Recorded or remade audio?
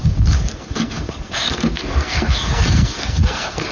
remade